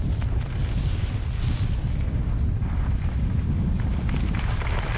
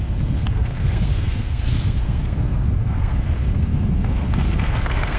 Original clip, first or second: first